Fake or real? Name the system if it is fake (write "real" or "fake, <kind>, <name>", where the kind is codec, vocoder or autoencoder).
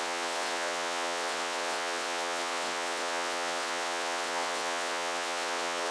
fake, vocoder, WaveNeXt